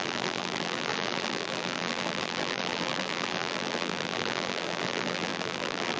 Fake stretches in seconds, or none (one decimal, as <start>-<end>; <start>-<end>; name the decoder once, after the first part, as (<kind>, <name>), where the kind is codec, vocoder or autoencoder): 0.0-6.0 (vocoder, BigVGAN v2)